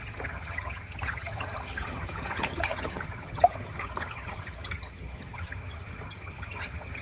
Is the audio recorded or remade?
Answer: remade